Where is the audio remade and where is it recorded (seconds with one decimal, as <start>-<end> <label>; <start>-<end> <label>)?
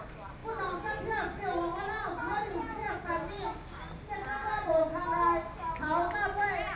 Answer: 0.0-2.2 recorded; 2.2-3.3 remade; 3.3-4.4 recorded; 4.4-5.0 remade; 5.0-6.8 recorded